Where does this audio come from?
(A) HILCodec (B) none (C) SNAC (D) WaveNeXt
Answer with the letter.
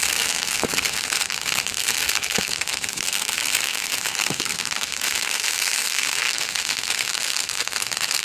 C